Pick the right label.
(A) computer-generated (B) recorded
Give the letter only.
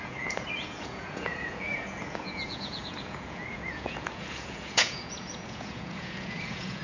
A